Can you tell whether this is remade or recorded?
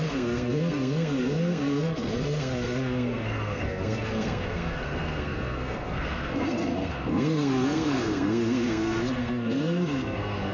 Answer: remade